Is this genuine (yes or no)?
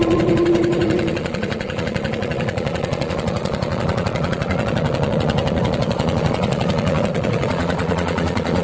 no